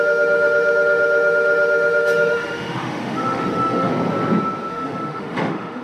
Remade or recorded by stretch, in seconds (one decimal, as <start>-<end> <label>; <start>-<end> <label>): 0.0-3.9 remade; 3.9-4.7 recorded; 4.7-5.8 remade